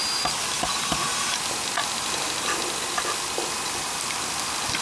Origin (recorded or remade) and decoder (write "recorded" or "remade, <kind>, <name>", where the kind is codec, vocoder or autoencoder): recorded